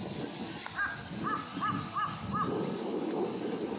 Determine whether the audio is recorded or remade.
recorded